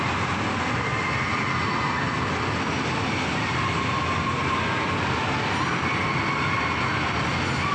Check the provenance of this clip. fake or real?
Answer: real